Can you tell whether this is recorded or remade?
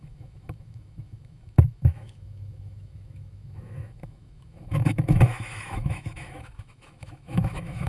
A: remade